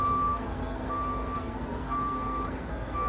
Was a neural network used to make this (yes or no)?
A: yes